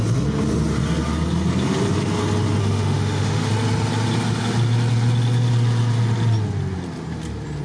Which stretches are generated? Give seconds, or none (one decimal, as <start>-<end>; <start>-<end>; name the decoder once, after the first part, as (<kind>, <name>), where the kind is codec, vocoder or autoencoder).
2.6-3.5 (autoencoder, DAC-VAE)

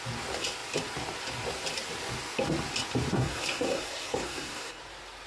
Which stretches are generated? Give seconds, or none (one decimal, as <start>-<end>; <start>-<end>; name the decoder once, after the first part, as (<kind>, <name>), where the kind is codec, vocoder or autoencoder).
3.1-4.8 (codec, SNAC)

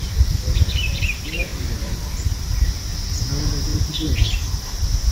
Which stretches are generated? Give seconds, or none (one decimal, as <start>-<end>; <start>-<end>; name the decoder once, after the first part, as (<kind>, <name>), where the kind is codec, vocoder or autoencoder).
3.7-5.1 (vocoder, BigVGAN v2)

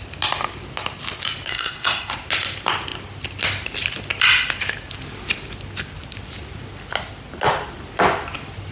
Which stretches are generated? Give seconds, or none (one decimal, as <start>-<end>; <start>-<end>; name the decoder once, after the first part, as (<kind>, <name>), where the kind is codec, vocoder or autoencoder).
1.5-2.1 (codec, SNAC)

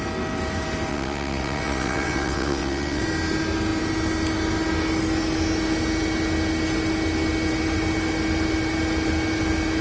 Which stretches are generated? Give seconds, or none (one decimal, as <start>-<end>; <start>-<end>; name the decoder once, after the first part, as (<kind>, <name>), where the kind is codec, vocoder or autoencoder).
0.9-3.0 (vocoder, WaveNeXt)

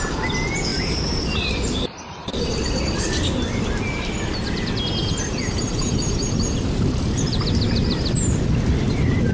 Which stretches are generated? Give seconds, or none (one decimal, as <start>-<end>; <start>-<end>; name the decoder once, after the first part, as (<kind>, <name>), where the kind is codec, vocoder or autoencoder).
0.7-2.8 (vocoder, BigVGAN v2); 5.0-7.4

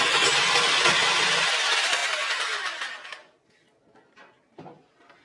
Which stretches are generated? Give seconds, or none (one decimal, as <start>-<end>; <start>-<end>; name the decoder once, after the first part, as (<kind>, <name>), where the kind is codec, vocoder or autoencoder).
none